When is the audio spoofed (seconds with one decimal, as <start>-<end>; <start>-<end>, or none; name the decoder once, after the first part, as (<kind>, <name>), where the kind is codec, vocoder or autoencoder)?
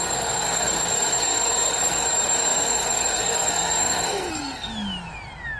0.0-4.7 (codec, SNAC)